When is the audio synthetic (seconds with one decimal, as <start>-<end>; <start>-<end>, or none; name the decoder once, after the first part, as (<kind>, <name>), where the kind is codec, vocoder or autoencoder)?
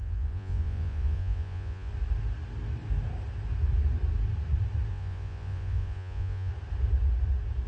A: 0.0-1.9 (vocoder, Vocos); 4.9-6.5